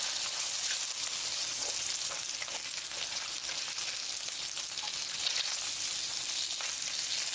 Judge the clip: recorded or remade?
recorded